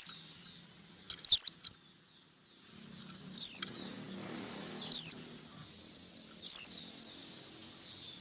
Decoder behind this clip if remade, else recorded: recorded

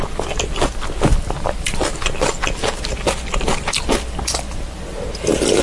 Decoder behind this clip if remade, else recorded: recorded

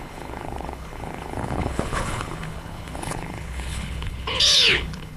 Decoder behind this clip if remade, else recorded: remade, codec, HILCodec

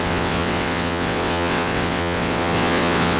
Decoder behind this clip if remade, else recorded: remade, vocoder, WaveNeXt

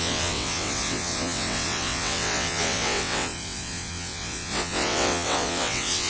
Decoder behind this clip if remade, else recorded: remade, vocoder, WaveNeXt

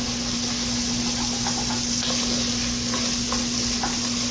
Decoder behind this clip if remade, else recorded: recorded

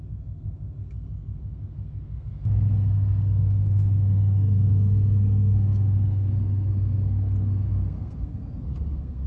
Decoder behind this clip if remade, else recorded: remade, codec, SNAC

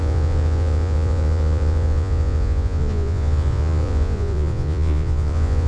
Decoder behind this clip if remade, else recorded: remade, vocoder, Vocos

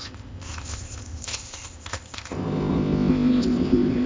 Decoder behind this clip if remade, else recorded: remade, codec, ZipCodec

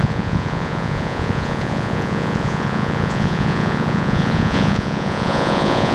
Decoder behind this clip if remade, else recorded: remade, vocoder, Vocos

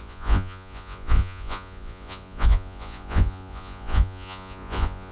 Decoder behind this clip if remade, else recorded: remade, vocoder, Vocos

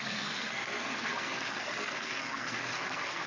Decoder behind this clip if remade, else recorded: remade, codec, SNAC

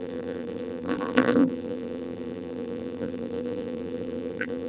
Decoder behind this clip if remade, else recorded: remade, vocoder, BigVGAN v2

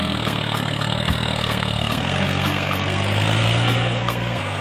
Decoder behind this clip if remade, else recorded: remade, codec, SNAC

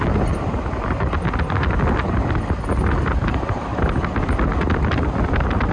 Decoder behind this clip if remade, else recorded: recorded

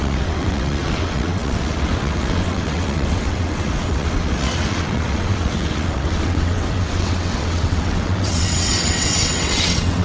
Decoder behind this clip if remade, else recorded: remade, vocoder, WaveNeXt